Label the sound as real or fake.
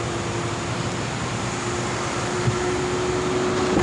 real